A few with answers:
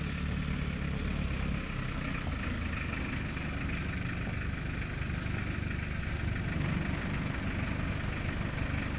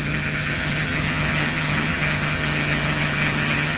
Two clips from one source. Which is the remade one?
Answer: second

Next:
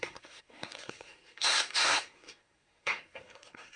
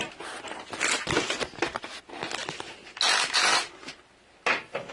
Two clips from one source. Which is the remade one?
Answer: first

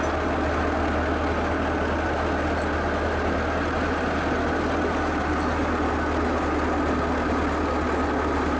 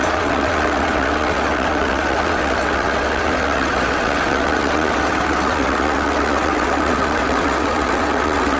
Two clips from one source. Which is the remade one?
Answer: second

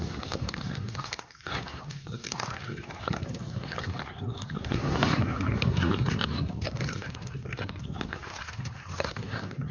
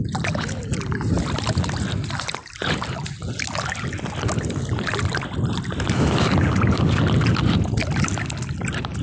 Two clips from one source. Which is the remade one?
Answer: first